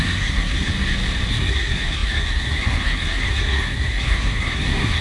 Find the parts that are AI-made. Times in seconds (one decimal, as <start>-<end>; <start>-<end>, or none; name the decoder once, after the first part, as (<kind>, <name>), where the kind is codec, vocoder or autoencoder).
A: 0.0-0.7 (codec, SNAC); 1.3-5.0